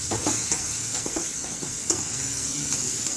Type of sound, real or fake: fake